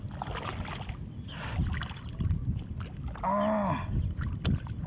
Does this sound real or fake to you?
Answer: real